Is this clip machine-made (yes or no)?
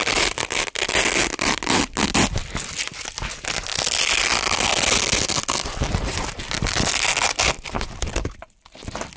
no